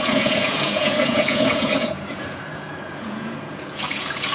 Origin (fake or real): fake